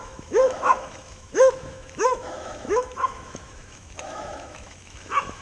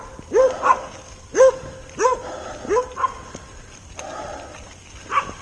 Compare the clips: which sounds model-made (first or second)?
first